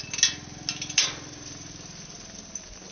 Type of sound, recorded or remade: recorded